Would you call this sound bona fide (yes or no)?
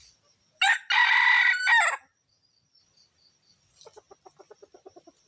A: yes